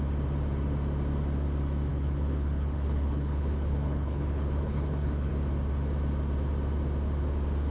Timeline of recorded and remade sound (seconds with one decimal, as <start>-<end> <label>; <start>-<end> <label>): 0.0-1.9 recorded; 1.9-5.3 remade; 5.3-7.7 recorded

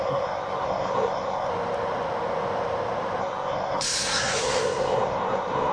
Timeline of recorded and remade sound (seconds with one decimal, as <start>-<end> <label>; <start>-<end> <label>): 0.0-1.5 remade; 1.5-3.2 recorded; 3.2-5.7 remade

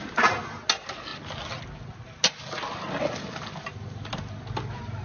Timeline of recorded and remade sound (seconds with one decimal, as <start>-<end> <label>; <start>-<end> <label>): 0.0-5.0 recorded

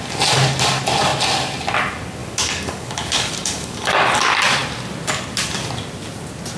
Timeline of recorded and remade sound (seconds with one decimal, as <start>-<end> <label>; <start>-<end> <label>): 0.0-2.2 recorded; 2.2-4.1 remade; 4.1-6.6 recorded

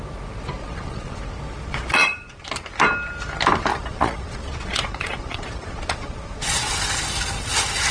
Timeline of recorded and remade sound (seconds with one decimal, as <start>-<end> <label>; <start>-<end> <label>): 0.0-0.6 recorded; 0.6-1.2 remade; 1.2-1.7 recorded; 1.7-2.5 remade; 2.5-3.7 recorded; 3.7-6.7 remade; 6.7-7.9 recorded